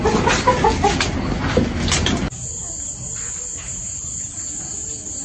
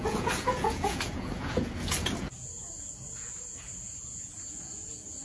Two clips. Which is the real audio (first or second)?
first